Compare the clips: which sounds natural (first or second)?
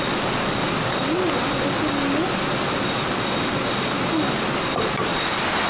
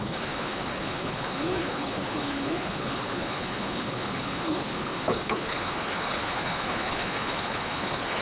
first